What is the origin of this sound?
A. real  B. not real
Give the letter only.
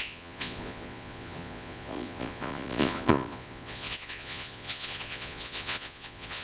B